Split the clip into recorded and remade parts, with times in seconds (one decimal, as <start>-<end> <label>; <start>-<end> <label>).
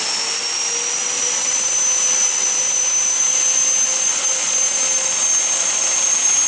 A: 0.0-6.5 recorded